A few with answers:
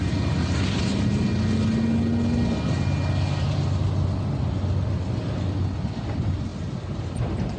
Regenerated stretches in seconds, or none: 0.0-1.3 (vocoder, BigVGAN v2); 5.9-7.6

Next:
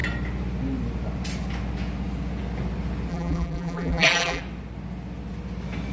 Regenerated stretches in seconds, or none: 3.1-4.4 (vocoder, BigVGAN v2)

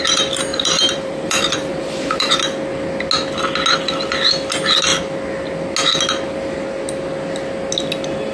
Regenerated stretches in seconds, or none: 0.5-2.3 (vocoder, BigVGAN v2)

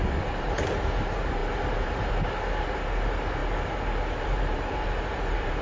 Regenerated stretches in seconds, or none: 0.0-3.4 (vocoder, BigVGAN v2); 4.2-5.6

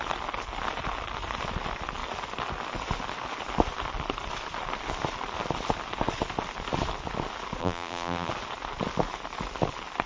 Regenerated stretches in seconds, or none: 7.6-8.3 (vocoder, BigVGAN v2)

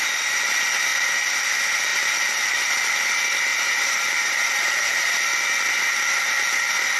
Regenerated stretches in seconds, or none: 3.5-5.0 (vocoder, BigVGAN v2)

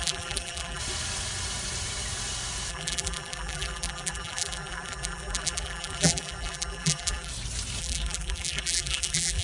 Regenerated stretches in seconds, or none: 0.0-0.8 (vocoder, BigVGAN v2); 2.7-7.3; 7.8-9.4

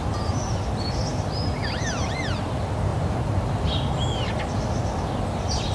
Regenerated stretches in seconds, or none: none